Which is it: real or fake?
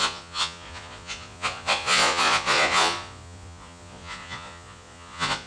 fake